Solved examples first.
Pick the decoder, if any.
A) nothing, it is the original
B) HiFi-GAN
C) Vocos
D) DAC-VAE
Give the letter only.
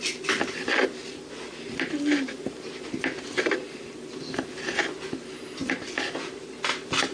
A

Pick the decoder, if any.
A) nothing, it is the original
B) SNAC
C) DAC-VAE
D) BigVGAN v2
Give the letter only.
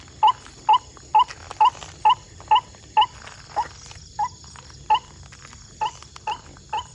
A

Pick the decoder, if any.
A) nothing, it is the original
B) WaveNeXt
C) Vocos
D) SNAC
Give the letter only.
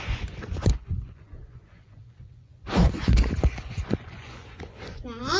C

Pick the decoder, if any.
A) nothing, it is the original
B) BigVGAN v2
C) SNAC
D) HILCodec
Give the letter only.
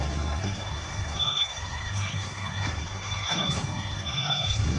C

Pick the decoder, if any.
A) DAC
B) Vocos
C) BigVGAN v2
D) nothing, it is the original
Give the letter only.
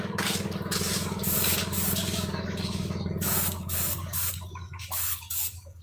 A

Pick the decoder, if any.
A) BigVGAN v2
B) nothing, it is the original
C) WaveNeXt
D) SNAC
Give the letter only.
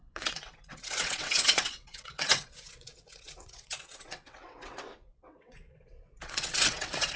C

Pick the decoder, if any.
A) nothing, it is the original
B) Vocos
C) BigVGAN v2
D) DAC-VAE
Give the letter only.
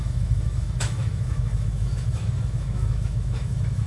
D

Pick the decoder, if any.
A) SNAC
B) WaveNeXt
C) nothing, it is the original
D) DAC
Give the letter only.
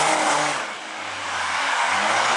D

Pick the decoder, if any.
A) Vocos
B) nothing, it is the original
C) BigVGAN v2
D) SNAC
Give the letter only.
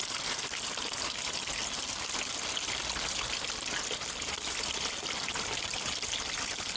B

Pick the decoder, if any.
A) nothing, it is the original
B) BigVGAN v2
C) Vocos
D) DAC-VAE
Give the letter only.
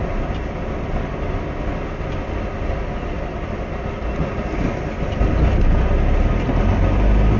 A